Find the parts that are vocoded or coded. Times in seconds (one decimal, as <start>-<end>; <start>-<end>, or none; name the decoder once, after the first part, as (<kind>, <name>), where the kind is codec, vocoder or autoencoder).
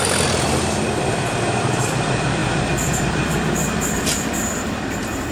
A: 0.0-2.4 (vocoder, BigVGAN v2); 4.0-5.3